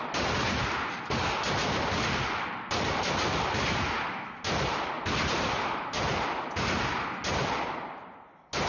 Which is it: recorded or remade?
recorded